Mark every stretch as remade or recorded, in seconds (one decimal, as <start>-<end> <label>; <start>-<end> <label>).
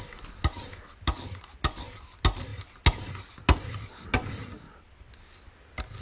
0.0-6.0 recorded